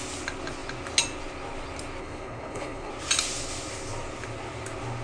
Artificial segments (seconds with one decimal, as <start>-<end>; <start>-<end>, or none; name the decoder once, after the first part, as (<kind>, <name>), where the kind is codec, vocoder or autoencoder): 2.0-2.9 (codec, HILCodec)